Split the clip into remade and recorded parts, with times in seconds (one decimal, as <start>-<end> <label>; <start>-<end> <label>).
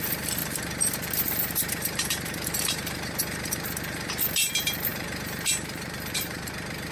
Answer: 0.0-0.4 recorded; 0.4-4.5 remade; 4.5-4.9 recorded; 4.9-6.5 remade; 6.5-6.9 recorded